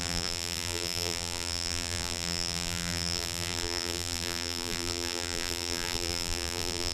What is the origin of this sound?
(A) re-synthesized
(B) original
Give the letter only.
A